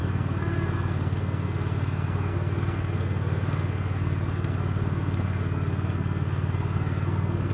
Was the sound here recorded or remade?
remade